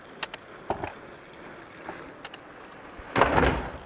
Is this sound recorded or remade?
recorded